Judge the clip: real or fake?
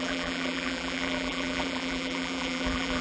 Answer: fake